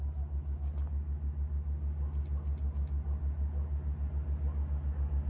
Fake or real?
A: real